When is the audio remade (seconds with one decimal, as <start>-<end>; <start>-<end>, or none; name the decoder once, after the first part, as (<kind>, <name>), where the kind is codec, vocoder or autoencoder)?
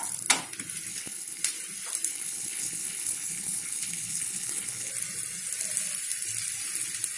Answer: 0.9-1.4 (codec, HILCodec); 2.1-4.9